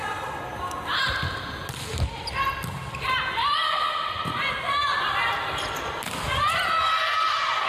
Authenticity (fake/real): real